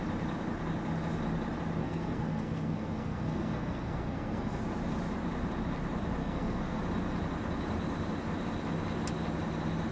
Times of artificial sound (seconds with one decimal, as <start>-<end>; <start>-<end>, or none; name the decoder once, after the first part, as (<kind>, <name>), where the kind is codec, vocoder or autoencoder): 1.8-4.6 (codec, SNAC); 6.2-6.8